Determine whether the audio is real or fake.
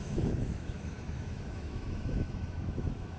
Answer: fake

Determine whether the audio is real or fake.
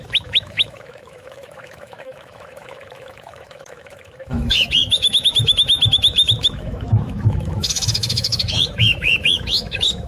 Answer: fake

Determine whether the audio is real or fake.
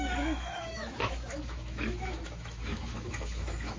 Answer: fake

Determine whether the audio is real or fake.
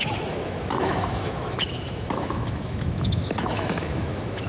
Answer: fake